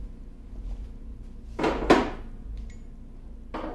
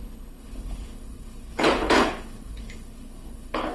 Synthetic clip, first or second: second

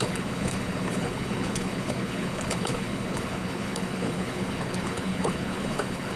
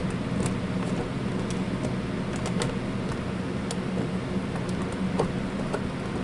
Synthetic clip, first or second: first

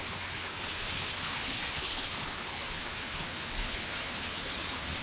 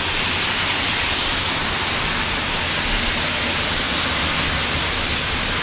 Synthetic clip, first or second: first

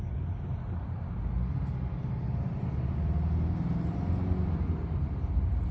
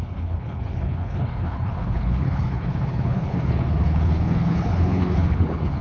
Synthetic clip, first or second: second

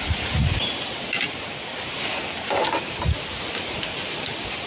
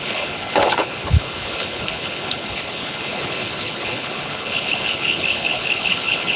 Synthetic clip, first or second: second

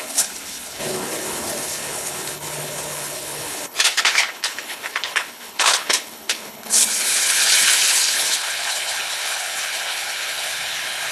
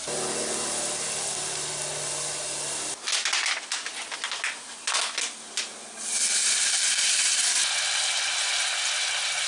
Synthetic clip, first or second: first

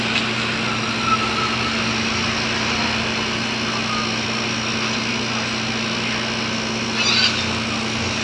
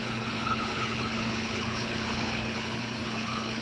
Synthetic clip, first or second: second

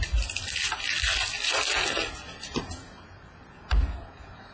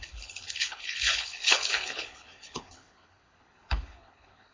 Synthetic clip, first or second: second